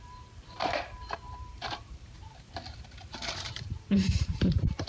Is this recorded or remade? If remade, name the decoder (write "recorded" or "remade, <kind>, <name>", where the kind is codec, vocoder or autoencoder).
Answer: remade, vocoder, BigVGAN v2